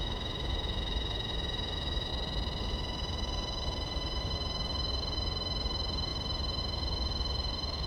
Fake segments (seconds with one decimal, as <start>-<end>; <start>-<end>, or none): 0.0-2.1; 2.6-7.9